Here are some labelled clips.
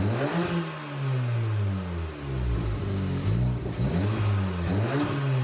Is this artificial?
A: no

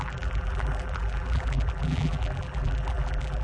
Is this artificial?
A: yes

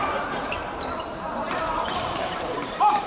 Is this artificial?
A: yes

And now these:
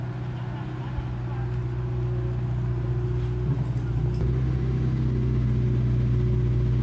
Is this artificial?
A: no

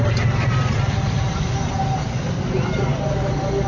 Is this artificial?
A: no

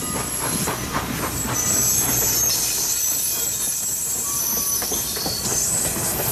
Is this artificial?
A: no